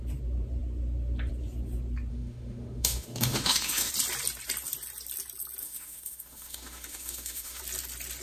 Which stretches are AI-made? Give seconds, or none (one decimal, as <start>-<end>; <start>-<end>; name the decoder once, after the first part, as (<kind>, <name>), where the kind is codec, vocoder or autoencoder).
2.1-3.9 (autoencoder, DAC-VAE); 5.6-7.6

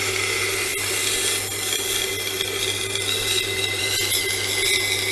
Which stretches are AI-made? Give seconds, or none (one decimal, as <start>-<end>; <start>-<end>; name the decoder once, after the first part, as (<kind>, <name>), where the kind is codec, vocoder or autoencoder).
none